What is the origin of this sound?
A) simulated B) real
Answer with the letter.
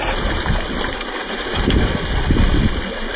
A